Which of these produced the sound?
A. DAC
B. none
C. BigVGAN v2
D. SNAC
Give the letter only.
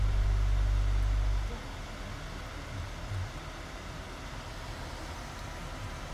B